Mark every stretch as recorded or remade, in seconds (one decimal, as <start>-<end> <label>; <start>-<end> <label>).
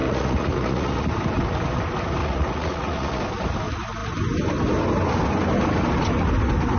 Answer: 0.0-1.1 remade; 1.1-2.2 recorded; 2.2-3.2 remade; 3.2-6.8 recorded